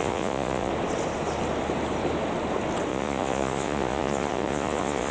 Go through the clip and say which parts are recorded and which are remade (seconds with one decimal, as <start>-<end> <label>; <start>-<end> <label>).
0.0-0.7 remade; 0.7-2.9 recorded; 2.9-5.1 remade